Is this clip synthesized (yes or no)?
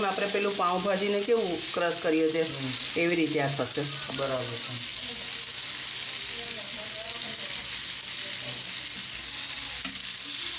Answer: no